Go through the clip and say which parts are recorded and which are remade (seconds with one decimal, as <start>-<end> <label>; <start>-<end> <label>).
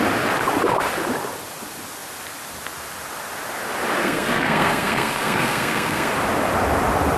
0.0-4.0 recorded; 4.0-6.1 remade; 6.1-7.2 recorded